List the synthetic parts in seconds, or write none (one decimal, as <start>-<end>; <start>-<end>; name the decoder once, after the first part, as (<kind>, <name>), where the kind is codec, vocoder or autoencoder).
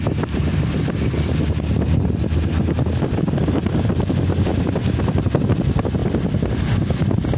none